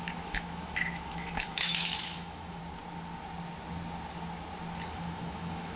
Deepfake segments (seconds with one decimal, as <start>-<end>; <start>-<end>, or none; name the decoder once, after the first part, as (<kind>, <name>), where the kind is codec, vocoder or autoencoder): 0.0-2.6 (autoencoder, DAC-VAE); 4.9-5.8